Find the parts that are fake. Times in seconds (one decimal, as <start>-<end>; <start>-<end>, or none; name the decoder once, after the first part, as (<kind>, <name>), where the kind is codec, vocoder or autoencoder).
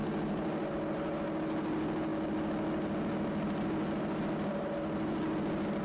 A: none